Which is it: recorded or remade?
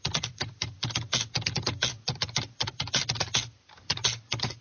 remade